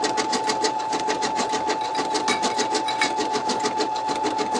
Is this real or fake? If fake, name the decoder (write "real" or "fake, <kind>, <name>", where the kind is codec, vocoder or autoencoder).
real